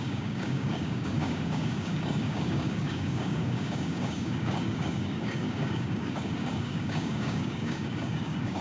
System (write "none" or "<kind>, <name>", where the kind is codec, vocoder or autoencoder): codec, DAC